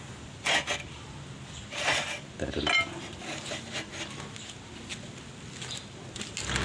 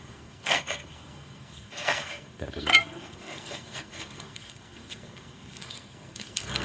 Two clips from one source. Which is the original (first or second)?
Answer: first